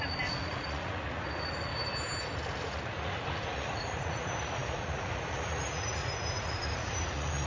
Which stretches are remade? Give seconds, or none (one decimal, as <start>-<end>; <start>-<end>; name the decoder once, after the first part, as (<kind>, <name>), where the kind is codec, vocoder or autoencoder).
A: 0.0-1.7 (vocoder, Vocos); 2.6-7.5